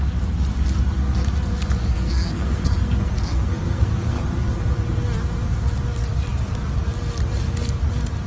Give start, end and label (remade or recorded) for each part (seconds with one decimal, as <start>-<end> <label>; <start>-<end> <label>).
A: 0.0-1.8 recorded; 1.8-4.2 remade; 4.2-8.3 recorded